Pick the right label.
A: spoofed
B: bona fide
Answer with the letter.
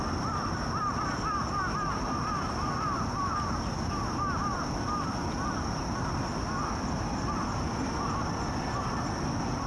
B